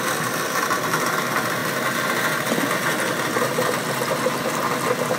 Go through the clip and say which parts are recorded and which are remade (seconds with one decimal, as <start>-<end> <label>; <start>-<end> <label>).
0.0-5.2 recorded